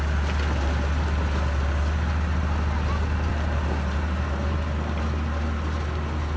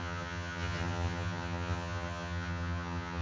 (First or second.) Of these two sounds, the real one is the first